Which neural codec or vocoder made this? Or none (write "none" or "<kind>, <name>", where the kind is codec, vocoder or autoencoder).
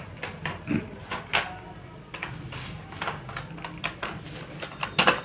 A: none